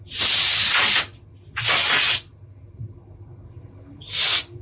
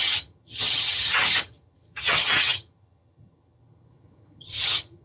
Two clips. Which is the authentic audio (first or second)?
first